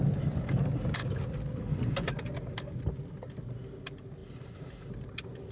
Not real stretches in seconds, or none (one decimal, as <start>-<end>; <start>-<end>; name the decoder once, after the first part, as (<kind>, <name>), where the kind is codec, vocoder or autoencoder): none